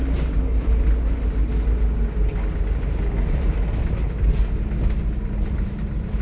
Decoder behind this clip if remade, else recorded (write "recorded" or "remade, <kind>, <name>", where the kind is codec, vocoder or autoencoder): recorded